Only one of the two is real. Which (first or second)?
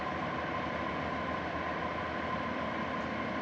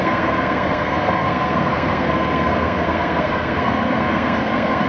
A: first